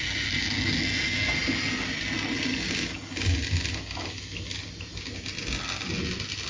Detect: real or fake real